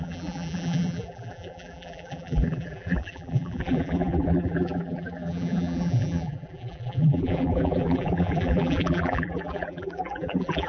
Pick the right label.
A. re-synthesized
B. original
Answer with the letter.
A